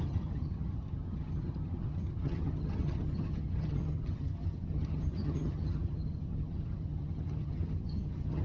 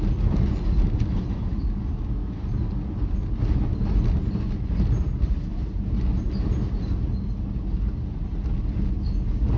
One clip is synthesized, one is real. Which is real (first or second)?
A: second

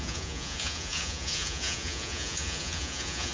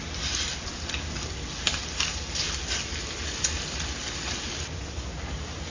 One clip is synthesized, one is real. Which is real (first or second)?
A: second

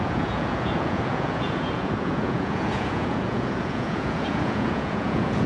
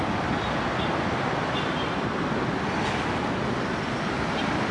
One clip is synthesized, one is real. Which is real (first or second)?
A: second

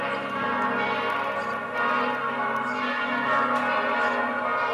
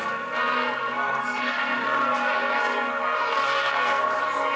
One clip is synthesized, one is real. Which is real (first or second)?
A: first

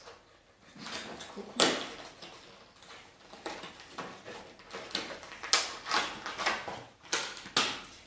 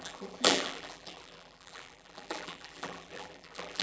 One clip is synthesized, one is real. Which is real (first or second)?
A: first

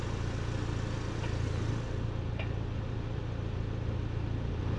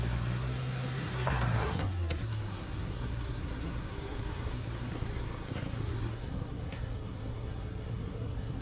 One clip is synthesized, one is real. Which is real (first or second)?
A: first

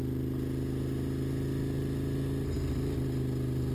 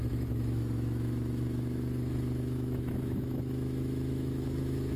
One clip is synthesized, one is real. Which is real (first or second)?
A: first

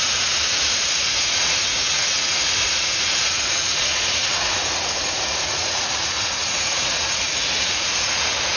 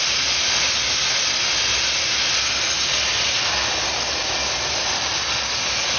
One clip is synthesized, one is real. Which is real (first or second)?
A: second